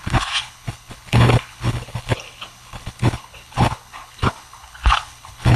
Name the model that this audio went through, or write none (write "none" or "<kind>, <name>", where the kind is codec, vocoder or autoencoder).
codec, HILCodec